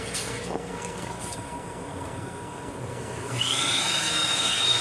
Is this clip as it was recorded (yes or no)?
no